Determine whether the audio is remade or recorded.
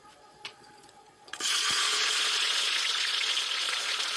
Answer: remade